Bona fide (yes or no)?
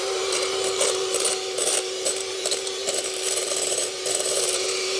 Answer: no